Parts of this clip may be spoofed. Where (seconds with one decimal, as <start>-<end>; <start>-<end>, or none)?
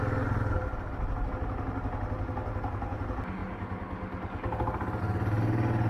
none